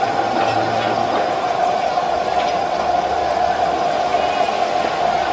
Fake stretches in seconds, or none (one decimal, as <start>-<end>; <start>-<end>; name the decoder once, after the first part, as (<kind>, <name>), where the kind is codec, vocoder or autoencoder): 1.0-2.7 (vocoder, BigVGAN v2)